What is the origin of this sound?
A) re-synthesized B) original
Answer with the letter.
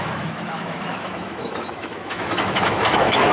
A